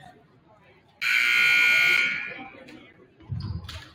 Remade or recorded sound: recorded